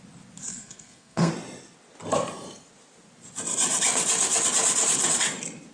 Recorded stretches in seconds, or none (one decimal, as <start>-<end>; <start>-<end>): 0.0-0.5; 1.3-5.7